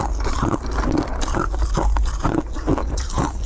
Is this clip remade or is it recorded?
recorded